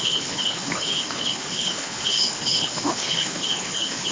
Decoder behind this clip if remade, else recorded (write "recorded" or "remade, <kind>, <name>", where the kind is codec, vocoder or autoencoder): remade, codec, HILCodec